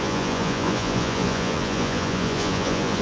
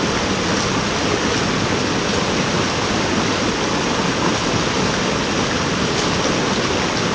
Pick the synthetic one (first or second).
first